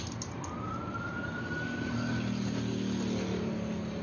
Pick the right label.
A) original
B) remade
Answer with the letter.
A